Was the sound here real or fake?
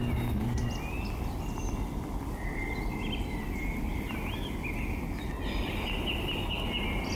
real